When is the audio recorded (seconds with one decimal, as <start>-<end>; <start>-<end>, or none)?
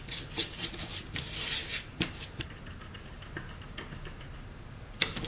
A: none